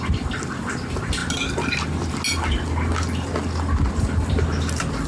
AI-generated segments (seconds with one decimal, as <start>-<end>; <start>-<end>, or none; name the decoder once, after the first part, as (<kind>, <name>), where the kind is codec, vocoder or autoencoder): none

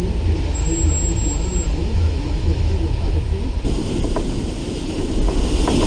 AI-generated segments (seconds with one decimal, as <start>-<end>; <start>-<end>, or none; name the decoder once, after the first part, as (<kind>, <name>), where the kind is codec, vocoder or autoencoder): 1.8-3.4 (autoencoder, DAC-VAE); 4.6-5.1

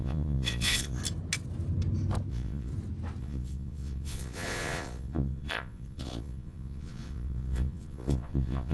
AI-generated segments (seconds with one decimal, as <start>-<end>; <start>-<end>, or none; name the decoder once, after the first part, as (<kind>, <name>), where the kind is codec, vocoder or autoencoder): 0.0-1.0 (vocoder, Vocos); 2.3-2.7; 3.2-8.7